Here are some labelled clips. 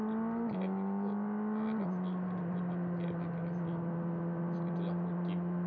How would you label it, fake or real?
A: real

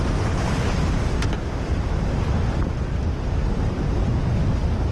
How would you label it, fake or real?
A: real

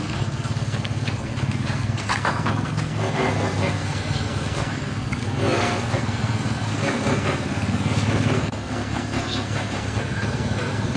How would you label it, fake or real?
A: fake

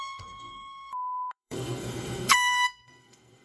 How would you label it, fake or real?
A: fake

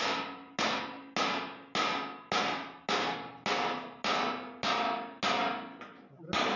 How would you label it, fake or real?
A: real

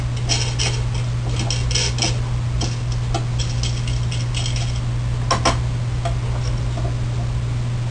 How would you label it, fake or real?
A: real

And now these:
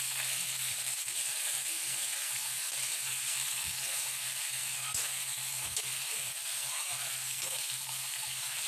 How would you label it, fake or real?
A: fake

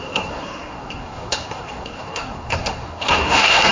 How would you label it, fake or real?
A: fake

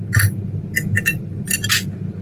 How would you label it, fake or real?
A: real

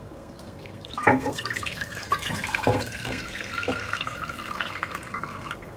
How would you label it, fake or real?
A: fake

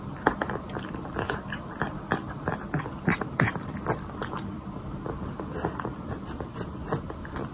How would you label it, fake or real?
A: real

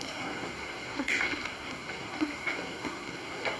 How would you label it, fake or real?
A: fake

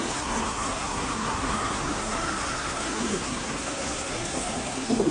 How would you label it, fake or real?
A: fake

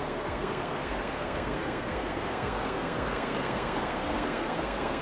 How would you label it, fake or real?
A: fake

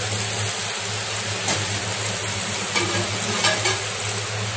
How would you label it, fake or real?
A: real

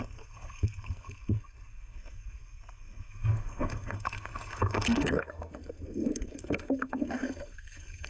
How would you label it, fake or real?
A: fake